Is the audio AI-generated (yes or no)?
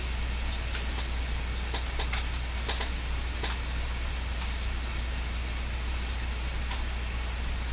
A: no